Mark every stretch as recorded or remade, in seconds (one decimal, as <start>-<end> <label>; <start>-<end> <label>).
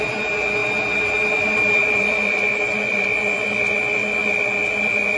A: 0.0-5.2 remade